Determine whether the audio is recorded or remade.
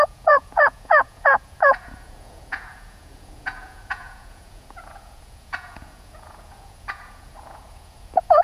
remade